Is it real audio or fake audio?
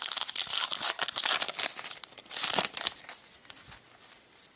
real